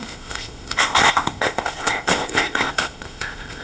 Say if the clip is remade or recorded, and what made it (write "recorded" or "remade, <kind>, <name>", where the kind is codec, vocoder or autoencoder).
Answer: remade, codec, ZipCodec